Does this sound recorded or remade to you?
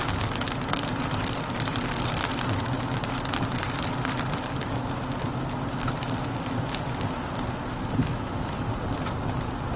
recorded